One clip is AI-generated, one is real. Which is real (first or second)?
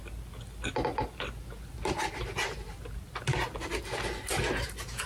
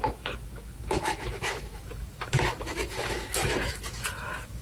first